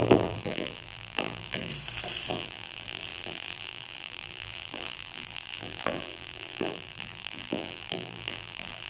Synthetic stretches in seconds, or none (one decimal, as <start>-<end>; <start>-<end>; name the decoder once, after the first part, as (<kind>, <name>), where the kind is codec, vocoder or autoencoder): 0.0-1.7 (vocoder, BigVGAN v2); 2.3-8.9